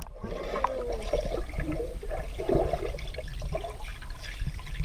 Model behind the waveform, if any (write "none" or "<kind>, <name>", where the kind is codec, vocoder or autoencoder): none